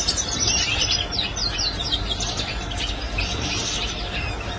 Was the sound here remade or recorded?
recorded